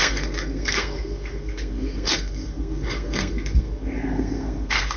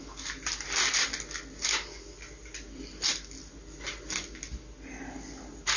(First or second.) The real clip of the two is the second